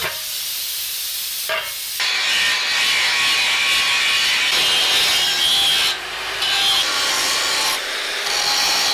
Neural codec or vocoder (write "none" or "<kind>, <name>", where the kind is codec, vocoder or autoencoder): none